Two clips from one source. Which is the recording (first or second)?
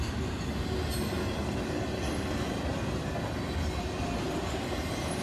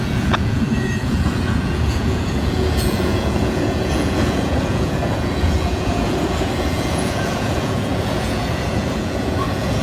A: first